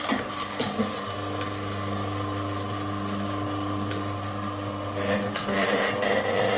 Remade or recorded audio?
recorded